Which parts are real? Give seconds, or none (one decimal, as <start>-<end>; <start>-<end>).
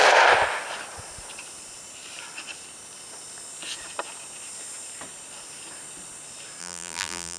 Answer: 0.0-6.6